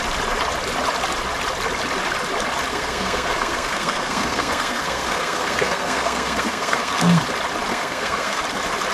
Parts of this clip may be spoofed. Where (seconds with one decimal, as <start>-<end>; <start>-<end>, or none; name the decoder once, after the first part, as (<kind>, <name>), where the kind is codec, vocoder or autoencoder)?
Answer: 2.7-7.2 (codec, SNAC); 7.7-8.4